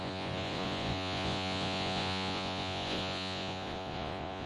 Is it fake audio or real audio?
fake